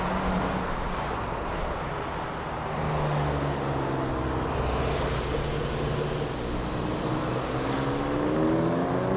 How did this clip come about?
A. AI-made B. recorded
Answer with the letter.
B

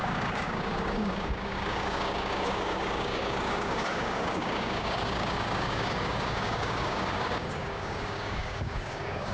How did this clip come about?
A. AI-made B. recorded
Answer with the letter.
A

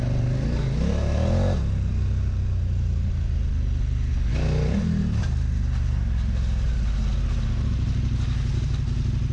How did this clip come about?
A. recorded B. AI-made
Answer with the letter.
A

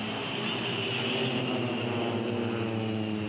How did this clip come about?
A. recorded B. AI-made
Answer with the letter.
A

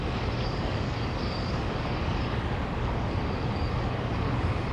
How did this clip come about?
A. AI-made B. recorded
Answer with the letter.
A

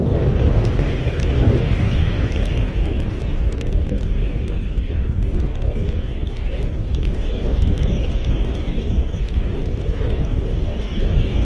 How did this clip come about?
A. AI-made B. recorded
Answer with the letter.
A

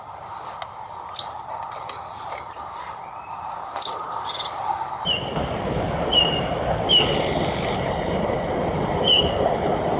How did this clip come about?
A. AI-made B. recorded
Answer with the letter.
B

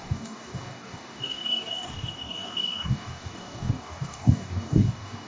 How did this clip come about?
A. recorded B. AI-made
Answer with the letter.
B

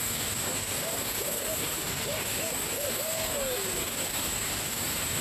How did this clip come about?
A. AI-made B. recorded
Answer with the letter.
A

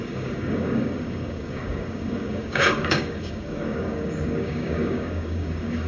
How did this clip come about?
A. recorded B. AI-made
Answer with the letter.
B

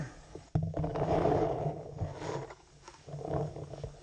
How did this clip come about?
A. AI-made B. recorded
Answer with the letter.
A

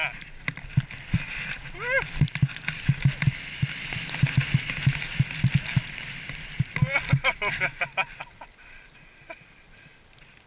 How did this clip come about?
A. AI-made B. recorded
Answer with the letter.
B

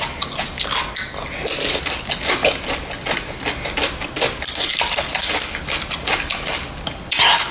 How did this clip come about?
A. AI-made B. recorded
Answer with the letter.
B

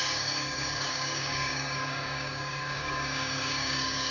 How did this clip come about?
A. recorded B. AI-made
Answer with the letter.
B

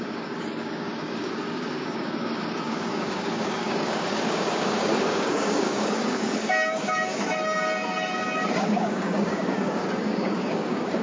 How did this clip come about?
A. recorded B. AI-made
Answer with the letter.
B